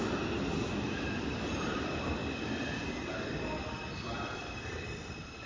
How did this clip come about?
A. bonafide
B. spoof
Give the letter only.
A